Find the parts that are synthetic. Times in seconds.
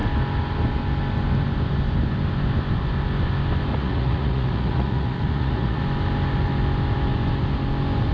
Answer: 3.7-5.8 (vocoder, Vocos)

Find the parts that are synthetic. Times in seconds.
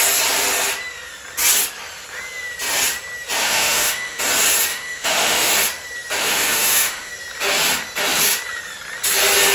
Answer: 3.4-4.2 (autoencoder, DAC-VAE); 4.7-5.5; 6.2-7.1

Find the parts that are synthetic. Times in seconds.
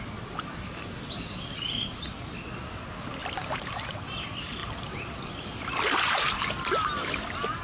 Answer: none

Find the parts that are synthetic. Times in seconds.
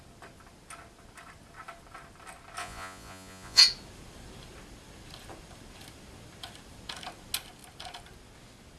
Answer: 2.6-3.6 (vocoder, Vocos)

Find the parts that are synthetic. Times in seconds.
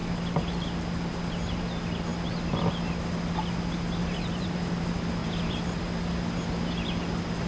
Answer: 4.0-4.8 (vocoder, BigVGAN v2); 5.2-5.8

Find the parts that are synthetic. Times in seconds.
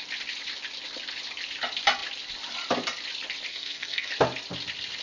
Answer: 3.5-4.1 (codec, SNAC)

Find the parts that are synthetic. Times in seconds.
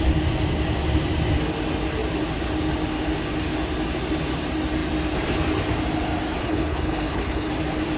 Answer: 6.4-7.5 (codec, HILCodec)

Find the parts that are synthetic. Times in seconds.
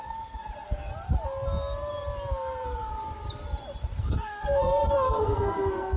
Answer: 0.0-0.9 (codec, SNAC); 2.3-2.9; 4.0-6.0